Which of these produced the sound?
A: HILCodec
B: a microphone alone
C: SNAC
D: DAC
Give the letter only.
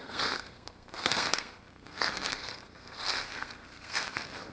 C